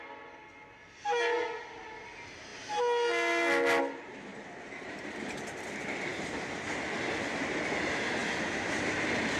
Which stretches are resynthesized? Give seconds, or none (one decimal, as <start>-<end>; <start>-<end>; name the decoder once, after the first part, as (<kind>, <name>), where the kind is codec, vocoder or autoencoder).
4.3-5.0 (vocoder, BigVGAN v2)